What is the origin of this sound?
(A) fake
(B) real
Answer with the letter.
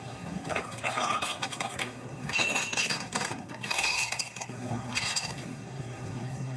A